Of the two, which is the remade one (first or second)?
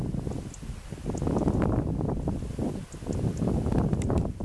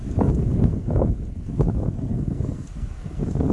second